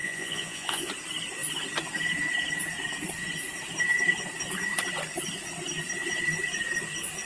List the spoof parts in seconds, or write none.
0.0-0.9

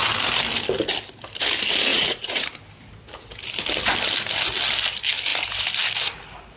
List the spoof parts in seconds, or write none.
1.9-2.5

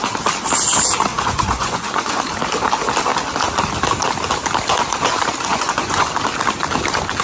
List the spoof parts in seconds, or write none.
1.1-2.2; 5.5-6.1